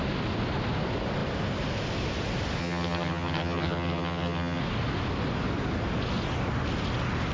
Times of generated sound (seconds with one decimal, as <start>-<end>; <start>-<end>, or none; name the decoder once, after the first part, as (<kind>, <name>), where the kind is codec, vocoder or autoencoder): 2.6-4.6 (vocoder, HiFi-GAN)